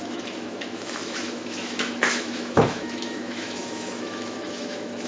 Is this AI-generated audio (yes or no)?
yes